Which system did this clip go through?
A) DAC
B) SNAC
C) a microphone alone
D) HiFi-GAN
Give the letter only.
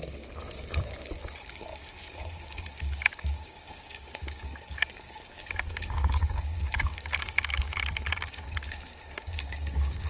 A